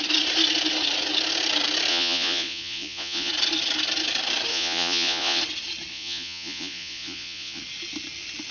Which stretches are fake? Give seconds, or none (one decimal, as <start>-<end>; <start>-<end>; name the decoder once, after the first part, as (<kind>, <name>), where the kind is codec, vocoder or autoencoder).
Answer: 1.9-3.3 (vocoder, Vocos); 4.5-5.4; 5.9-7.6